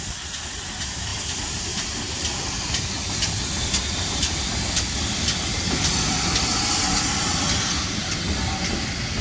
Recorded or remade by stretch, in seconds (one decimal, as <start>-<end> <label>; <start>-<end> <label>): 0.0-9.2 recorded